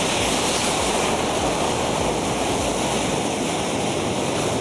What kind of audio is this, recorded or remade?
recorded